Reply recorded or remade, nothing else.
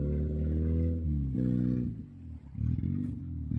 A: recorded